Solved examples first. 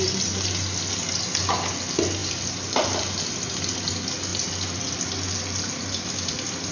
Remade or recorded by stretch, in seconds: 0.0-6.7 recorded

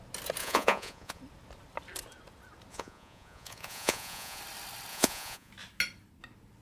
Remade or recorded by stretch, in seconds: 0.0-0.4 recorded; 0.4-1.2 remade; 1.2-2.7 recorded; 2.7-4.4 remade; 4.4-4.9 recorded; 4.9-5.5 remade; 5.5-6.6 recorded

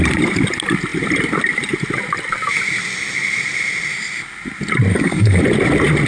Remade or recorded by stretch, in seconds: 0.0-4.9 recorded; 4.9-5.4 remade; 5.4-6.1 recorded

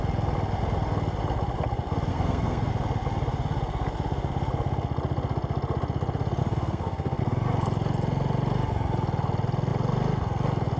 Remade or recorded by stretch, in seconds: 0.0-2.1 recorded; 2.1-2.7 remade; 2.7-6.4 recorded; 6.4-7.2 remade; 7.2-10.8 recorded

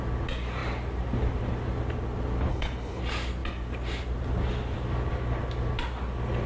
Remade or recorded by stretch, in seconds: 0.0-2.5 recorded; 2.5-3.0 remade; 3.0-6.5 recorded

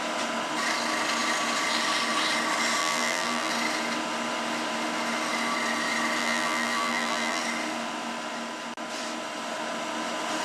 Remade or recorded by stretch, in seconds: 0.0-2.8 recorded; 2.8-3.5 remade; 3.5-6.2 recorded; 6.2-7.4 remade; 7.4-10.4 recorded